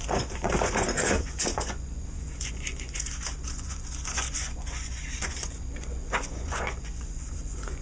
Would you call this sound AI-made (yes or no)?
yes